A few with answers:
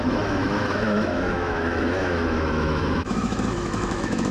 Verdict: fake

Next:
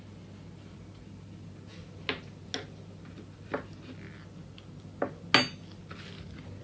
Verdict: real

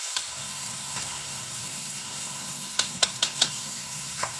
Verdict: fake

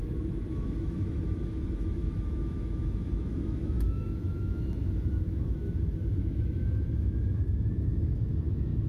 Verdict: fake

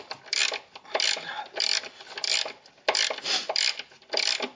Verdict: real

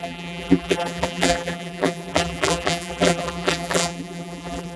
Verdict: fake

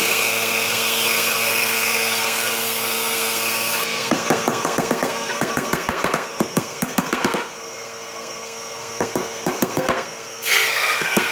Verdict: fake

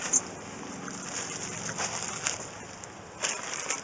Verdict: real